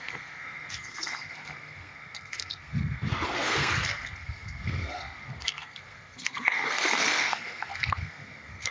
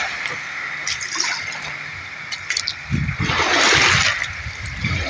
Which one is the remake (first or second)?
first